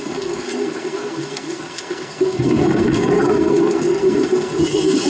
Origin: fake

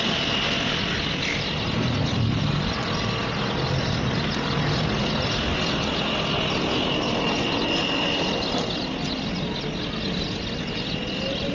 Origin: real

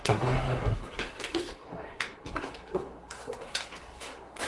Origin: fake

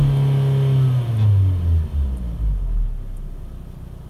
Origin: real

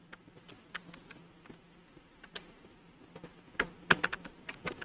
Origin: real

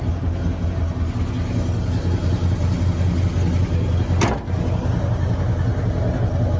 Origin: real